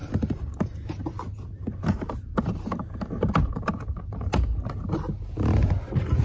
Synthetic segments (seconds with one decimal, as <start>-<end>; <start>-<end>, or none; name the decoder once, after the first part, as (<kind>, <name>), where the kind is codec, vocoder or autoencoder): 0.0-0.6 (vocoder, BigVGAN v2); 1.7-4.0